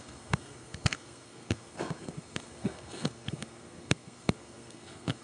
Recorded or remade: remade